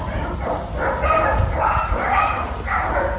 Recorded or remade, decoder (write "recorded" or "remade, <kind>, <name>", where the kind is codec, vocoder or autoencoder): recorded